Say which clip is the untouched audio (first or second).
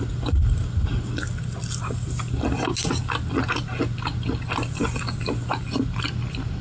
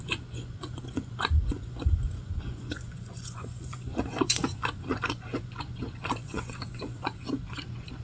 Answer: first